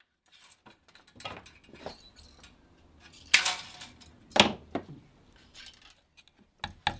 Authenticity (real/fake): real